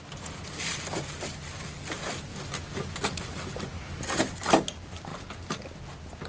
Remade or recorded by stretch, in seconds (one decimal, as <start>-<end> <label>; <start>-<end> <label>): 0.0-6.3 recorded